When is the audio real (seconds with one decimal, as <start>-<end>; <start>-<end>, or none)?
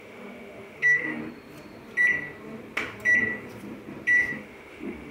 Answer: 1.2-4.3